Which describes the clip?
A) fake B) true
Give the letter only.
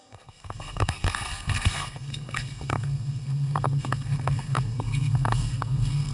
A